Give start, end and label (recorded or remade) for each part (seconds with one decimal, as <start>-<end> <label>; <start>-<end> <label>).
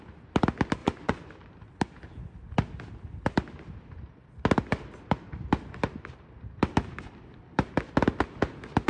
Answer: 0.0-0.8 recorded; 0.8-1.3 remade; 1.3-8.9 recorded